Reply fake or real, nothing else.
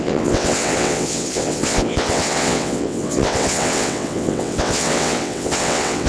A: fake